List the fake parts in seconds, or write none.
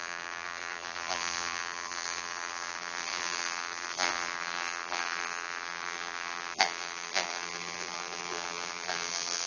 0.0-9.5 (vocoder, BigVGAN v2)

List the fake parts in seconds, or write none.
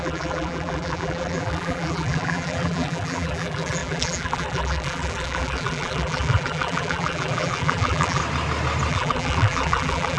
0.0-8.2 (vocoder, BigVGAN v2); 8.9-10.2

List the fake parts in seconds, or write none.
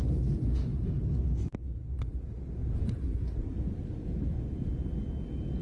2.6-3.4 (vocoder, BigVGAN v2)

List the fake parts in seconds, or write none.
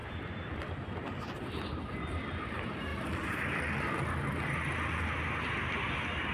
0.0-1.8 (vocoder, BigVGAN v2); 2.9-3.6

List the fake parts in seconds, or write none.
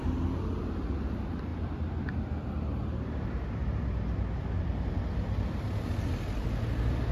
none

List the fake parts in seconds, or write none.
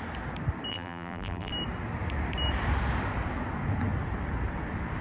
0.7-1.5 (vocoder, BigVGAN v2)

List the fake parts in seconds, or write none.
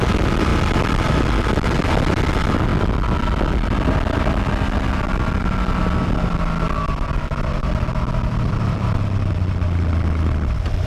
0.0-2.7 (vocoder, BigVGAN v2); 7.6-10.9